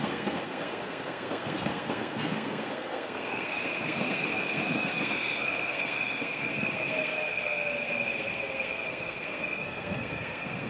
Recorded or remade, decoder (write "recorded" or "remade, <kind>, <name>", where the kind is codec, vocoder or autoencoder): remade, codec, SNAC